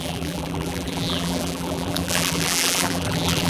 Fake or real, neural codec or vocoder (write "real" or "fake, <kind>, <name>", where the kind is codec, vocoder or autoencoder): fake, vocoder, BigVGAN v2